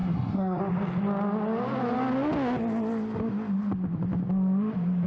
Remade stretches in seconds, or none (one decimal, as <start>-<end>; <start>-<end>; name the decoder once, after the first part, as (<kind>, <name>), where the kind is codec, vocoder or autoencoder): 0.0-0.6 (codec, SNAC)

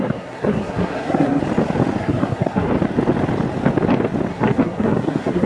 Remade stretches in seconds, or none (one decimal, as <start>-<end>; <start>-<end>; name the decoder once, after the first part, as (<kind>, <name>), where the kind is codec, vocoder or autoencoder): 0.0-1.4 (codec, SNAC); 2.0-2.7; 4.3-5.5

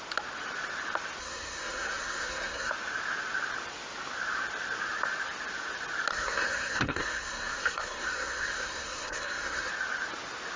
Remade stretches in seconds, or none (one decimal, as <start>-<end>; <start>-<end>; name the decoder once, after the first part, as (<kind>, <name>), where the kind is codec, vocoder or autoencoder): 1.2-2.7 (codec, SNAC); 6.1-9.7

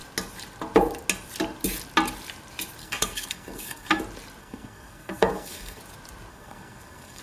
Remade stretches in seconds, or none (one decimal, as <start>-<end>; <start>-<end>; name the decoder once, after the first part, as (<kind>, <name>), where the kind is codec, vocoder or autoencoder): 2.8-4.0 (codec, SNAC); 4.4-5.8; 6.3-7.2

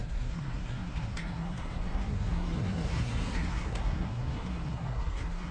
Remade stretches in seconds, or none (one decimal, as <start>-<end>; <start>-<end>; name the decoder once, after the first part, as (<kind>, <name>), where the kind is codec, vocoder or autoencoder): 0.0-5.5 (codec, SNAC)

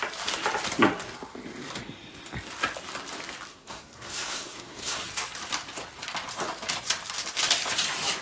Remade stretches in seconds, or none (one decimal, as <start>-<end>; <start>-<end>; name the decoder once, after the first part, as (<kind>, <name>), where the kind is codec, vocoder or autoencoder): 3.5-5.0 (codec, SNAC)

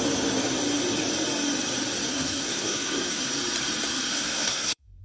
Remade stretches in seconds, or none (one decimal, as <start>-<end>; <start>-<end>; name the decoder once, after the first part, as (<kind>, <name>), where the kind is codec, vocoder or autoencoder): 2.1-3.3 (codec, SNAC); 4.1-5.0